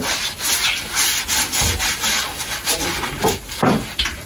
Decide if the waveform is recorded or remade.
recorded